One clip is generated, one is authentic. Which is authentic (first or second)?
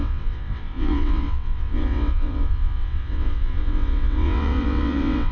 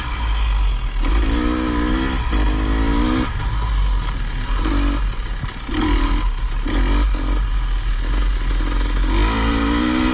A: second